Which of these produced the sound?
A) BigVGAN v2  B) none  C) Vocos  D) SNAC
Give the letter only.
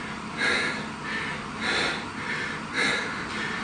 B